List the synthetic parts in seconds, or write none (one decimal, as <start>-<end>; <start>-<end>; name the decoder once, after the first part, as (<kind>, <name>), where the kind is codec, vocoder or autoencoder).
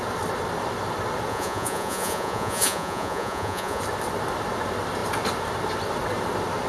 1.3-3.8 (vocoder, Vocos)